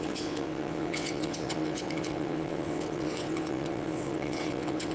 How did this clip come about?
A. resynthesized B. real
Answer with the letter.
A